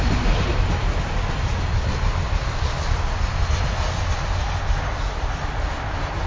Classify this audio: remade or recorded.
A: recorded